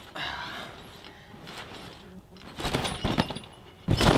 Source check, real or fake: real